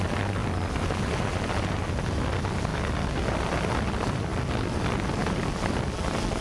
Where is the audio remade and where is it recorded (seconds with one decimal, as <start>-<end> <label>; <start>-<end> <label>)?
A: 0.0-2.7 recorded; 2.7-3.2 remade; 3.2-6.4 recorded